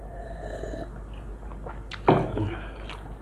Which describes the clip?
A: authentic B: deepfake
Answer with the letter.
A